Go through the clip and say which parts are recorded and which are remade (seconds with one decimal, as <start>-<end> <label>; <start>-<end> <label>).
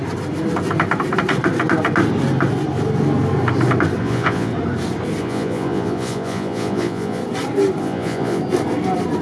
0.0-4.0 recorded; 4.0-4.5 remade; 4.5-5.2 recorded; 5.2-7.2 remade; 7.2-7.8 recorded; 7.8-8.4 remade; 8.4-9.2 recorded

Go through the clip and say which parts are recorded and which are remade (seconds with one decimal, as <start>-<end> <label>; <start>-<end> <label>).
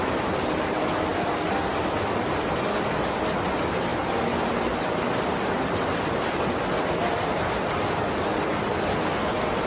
0.0-9.7 recorded